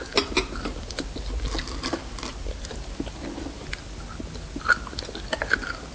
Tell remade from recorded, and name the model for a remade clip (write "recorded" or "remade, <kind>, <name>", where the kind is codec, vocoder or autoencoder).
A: recorded